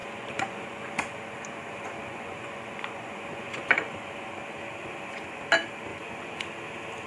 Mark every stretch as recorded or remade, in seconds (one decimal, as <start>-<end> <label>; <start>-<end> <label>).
0.0-4.3 remade; 4.3-4.8 recorded; 4.8-5.4 remade; 5.4-5.9 recorded; 5.9-6.4 remade; 6.4-7.1 recorded